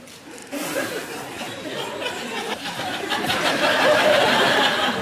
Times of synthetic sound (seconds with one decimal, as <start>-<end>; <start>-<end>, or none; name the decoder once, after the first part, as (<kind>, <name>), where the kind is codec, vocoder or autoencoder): 0.4-1.1 (vocoder, BigVGAN v2); 2.3-4.2